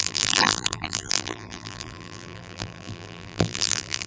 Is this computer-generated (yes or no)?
yes